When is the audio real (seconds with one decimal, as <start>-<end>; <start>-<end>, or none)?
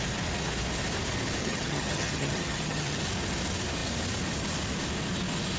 0.0-1.4; 3.0-5.6